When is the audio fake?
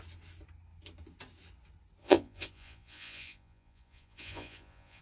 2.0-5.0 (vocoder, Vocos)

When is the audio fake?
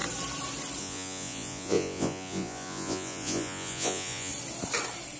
0.8-4.3 (vocoder, Vocos)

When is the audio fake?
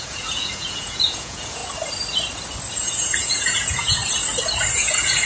0.0-1.6 (vocoder, Vocos); 2.7-4.0; 4.6-5.3